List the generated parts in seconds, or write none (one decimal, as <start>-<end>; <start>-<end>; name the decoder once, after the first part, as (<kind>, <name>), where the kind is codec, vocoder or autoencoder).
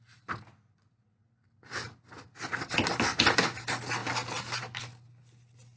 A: none